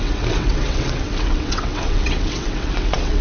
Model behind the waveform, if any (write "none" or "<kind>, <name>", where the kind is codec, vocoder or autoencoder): vocoder, WaveNeXt